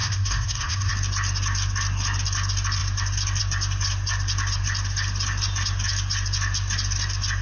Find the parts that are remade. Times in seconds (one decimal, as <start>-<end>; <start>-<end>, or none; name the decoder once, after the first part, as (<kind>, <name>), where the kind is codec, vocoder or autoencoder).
0.0-0.9 (codec, SNAC)